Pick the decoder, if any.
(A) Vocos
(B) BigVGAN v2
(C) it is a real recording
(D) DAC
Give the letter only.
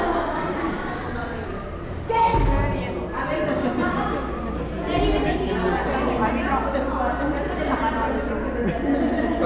C